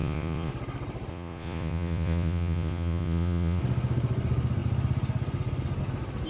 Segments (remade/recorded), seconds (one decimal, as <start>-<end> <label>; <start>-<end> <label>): 0.0-0.5 remade; 0.5-1.1 recorded; 1.1-3.6 remade; 3.6-6.3 recorded